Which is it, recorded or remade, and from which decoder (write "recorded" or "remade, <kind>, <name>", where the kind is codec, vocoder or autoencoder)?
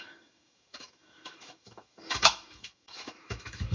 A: remade, autoencoder, DAC-VAE